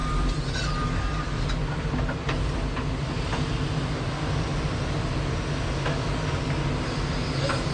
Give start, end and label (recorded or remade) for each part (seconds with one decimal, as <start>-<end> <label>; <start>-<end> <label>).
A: 0.0-7.7 recorded